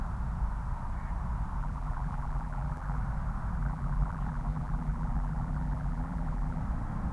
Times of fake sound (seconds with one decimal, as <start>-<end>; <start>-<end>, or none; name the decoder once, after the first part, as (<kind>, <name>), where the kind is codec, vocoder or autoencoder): 1.6-3.0 (vocoder, BigVGAN v2); 3.6-6.6